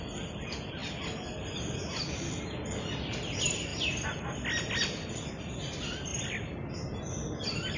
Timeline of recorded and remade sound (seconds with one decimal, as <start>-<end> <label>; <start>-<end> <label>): 0.0-3.7 recorded; 3.7-5.3 remade; 5.3-6.1 recorded; 6.1-6.7 remade; 6.7-7.8 recorded